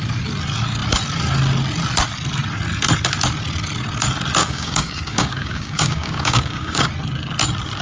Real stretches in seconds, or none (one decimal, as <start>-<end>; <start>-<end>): 0.0-4.4; 6.9-7.8